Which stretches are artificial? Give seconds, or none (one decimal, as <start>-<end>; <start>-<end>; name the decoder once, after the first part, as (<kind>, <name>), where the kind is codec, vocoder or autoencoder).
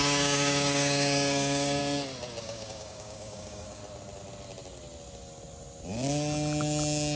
0.0-1.8 (codec, DAC); 2.4-3.8